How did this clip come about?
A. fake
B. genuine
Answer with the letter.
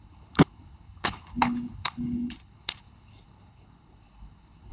A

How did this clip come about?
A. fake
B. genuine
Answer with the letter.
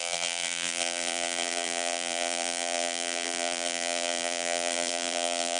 A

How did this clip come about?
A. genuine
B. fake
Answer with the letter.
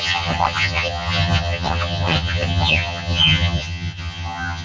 B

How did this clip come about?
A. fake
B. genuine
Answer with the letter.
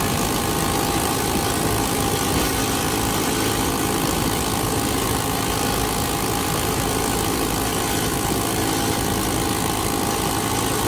B